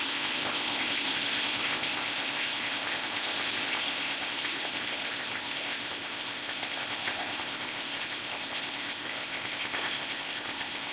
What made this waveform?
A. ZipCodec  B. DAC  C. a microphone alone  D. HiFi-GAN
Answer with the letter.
A